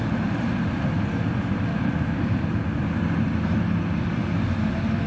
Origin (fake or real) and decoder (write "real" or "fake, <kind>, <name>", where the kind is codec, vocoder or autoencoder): real